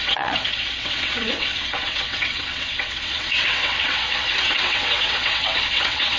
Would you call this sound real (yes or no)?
no